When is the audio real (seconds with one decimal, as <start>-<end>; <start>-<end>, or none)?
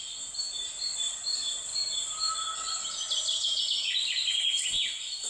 0.0-5.3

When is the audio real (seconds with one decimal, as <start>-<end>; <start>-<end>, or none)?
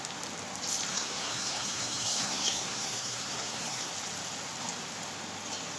0.0-0.9; 3.9-5.8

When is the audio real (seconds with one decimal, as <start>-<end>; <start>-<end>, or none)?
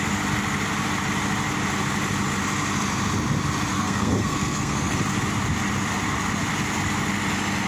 0.0-3.7; 5.0-7.7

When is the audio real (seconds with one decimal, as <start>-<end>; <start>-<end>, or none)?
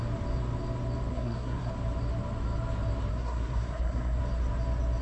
0.0-1.1; 1.7-3.1; 4.2-5.0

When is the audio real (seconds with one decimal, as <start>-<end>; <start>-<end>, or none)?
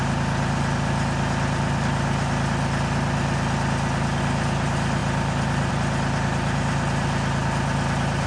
0.0-8.3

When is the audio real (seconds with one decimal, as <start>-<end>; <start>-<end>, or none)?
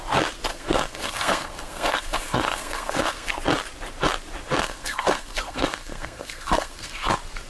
0.0-0.5; 3.3-4.6; 7.1-7.5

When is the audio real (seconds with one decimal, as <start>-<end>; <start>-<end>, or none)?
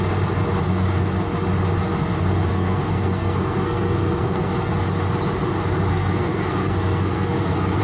0.0-2.5; 4.7-5.9